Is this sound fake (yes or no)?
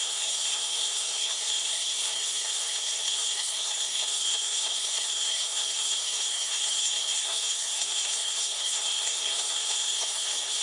yes